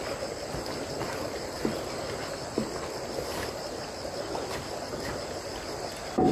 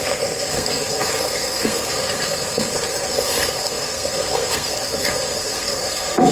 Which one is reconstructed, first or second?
second